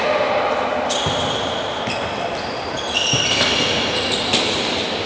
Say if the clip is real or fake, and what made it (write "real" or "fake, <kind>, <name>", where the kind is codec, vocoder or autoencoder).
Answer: real